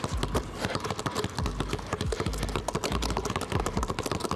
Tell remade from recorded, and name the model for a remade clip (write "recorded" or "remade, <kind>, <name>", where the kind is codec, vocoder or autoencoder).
recorded